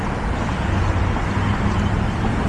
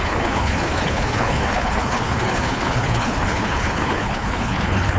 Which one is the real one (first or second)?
first